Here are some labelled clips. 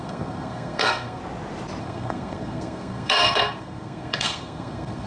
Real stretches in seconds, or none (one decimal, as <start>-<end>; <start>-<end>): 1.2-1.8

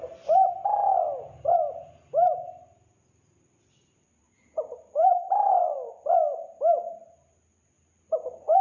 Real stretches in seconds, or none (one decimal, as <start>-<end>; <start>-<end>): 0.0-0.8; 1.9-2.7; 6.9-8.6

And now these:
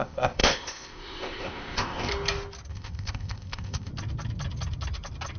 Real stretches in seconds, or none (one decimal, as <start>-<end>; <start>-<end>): 2.1-2.7; 3.9-5.4